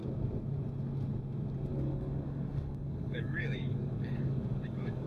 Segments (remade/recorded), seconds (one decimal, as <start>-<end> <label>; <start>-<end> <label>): 0.0-1.7 recorded; 1.7-5.1 remade